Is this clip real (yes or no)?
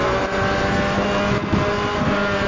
yes